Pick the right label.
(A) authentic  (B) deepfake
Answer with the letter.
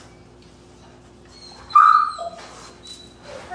A